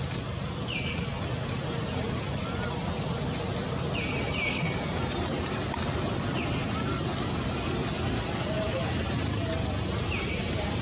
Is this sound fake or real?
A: real